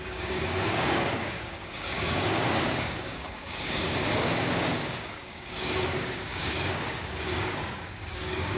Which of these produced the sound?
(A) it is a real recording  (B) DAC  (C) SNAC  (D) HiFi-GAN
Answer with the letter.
B